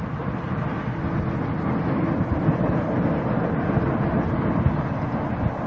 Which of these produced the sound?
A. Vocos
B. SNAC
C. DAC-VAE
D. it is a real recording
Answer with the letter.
D